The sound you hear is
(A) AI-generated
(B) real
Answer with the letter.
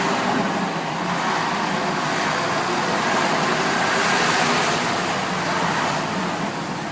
B